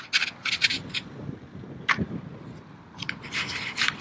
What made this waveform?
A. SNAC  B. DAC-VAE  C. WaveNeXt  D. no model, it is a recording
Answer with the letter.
D